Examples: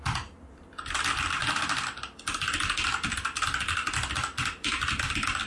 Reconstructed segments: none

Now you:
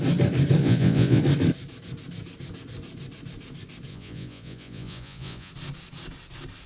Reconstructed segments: 0.6-1.2; 3.9-5.5

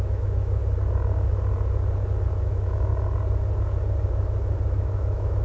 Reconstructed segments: 0.0-0.6; 2.4-2.9; 4.7-5.4

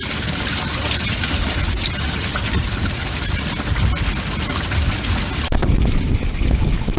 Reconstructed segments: none